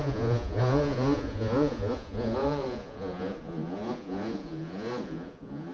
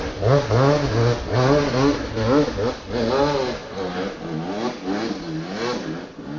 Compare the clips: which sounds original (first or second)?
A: second